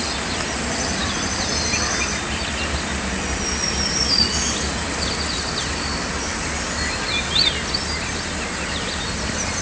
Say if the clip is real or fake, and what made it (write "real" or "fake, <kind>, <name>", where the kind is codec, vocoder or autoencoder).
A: real